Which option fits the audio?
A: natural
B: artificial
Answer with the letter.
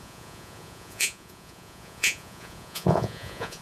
B